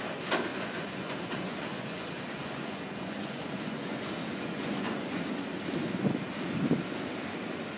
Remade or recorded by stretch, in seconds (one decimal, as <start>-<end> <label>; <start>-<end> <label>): 0.0-0.5 recorded; 0.5-5.2 remade; 5.2-7.8 recorded